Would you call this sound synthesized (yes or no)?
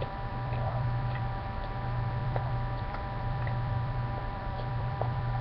yes